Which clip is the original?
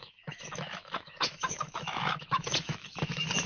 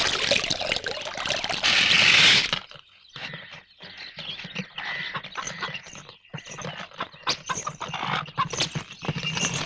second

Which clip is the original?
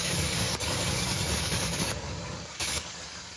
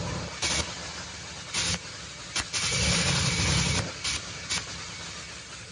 second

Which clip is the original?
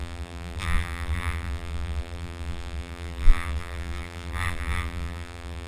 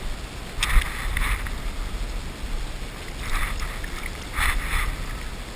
second